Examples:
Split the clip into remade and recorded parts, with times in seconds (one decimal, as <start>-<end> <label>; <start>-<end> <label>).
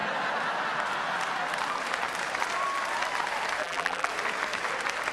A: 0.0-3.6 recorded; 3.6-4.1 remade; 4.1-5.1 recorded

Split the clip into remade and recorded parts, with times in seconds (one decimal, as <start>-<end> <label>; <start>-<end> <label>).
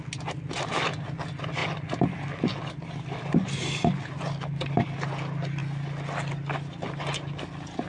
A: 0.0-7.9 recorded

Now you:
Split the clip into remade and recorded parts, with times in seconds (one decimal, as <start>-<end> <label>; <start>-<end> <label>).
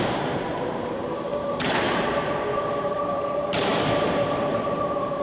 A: 0.0-5.2 remade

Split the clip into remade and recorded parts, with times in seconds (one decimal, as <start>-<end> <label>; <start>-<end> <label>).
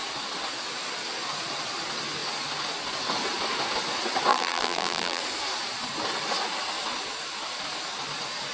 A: 0.0-4.3 recorded; 4.3-5.2 remade; 5.2-8.5 recorded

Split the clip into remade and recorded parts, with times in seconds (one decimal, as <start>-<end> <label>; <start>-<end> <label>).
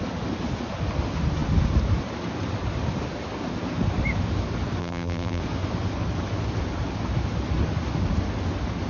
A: 0.0-4.8 recorded; 4.8-5.4 remade; 5.4-8.9 recorded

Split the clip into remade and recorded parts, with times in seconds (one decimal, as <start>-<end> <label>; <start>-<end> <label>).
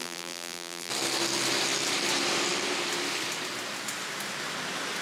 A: 0.0-0.9 remade; 0.9-5.0 recorded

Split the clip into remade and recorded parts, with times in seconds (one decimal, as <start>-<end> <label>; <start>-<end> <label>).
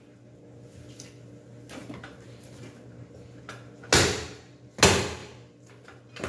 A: 0.0-1.8 recorded; 1.8-3.4 remade; 3.4-6.3 recorded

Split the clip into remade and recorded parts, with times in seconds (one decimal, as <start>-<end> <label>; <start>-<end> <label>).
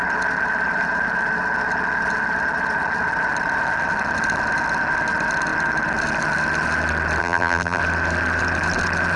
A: 0.0-7.2 recorded; 7.2-7.8 remade; 7.8-9.2 recorded